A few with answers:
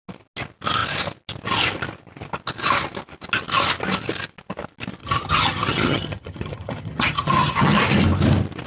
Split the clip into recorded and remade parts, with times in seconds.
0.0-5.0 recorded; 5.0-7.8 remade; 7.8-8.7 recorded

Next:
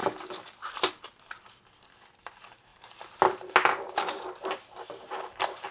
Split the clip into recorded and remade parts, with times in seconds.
0.0-5.7 recorded